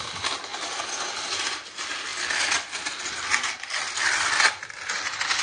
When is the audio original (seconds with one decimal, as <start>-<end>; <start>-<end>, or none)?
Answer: 0.0-5.4